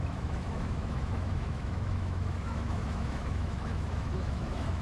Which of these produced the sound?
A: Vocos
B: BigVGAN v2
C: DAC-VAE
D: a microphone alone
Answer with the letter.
C